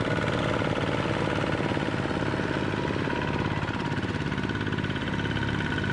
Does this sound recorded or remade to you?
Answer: recorded